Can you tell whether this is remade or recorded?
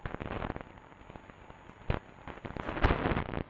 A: recorded